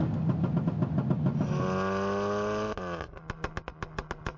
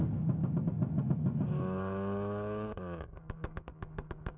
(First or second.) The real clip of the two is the first